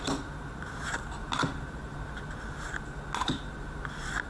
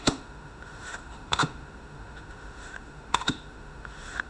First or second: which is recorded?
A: first